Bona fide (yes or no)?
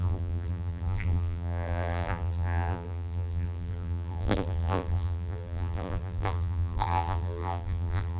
no